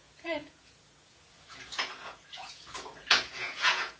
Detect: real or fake fake